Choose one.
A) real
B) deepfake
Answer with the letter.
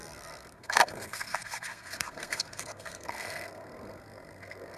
B